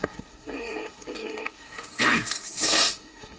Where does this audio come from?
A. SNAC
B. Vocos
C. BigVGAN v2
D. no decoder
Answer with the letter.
A